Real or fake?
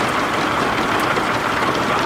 real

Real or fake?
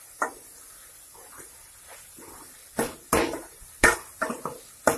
real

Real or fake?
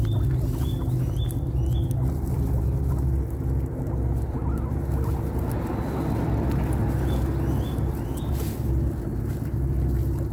real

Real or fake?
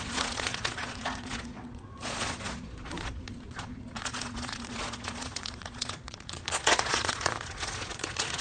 fake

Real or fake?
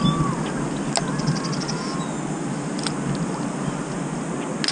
real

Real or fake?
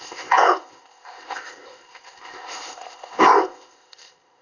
fake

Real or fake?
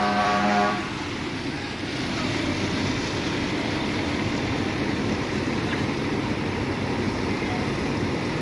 fake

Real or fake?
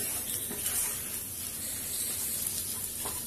real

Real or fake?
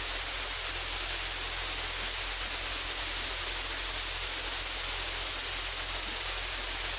real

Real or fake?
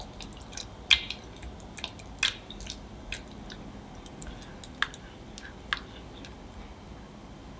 real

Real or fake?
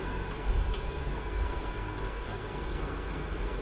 fake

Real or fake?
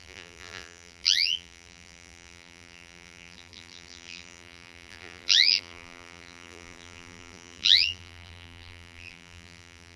fake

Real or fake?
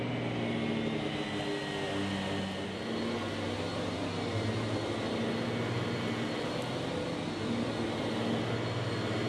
real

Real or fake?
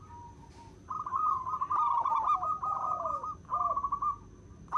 real